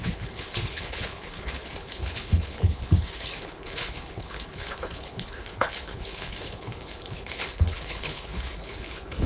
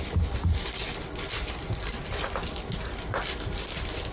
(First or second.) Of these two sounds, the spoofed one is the first